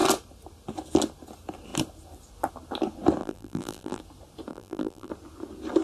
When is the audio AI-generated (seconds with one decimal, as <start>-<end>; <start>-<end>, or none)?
3.2-4.0; 4.5-5.1